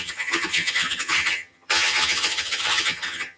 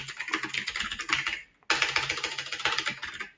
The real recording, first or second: second